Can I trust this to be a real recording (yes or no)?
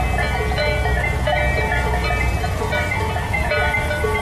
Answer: yes